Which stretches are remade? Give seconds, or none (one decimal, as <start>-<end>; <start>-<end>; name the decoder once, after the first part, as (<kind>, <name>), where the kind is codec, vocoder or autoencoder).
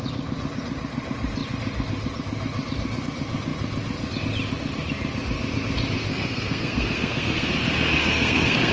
6.1-7.5 (codec, SNAC); 8.0-8.7